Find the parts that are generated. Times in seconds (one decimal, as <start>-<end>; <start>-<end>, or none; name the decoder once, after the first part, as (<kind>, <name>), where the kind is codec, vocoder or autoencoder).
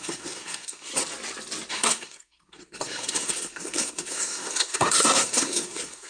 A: 0.0-0.9 (codec, SNAC); 1.7-6.1